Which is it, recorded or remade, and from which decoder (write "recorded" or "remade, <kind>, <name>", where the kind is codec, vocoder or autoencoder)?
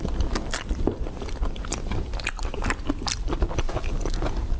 recorded